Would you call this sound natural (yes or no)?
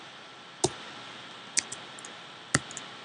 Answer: yes